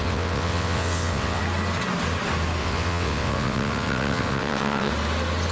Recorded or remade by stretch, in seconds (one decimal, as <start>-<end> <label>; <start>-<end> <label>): 0.0-1.4 remade; 1.4-2.6 recorded; 2.6-4.9 remade; 4.9-5.5 recorded